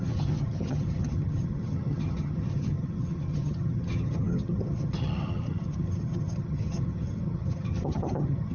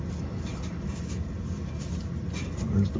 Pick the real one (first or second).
second